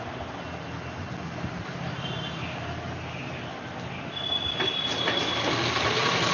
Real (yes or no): yes